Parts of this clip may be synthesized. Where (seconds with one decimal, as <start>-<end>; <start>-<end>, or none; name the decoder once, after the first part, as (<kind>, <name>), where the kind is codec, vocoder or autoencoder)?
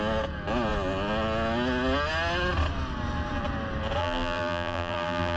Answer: 4.0-5.4 (vocoder, BigVGAN v2)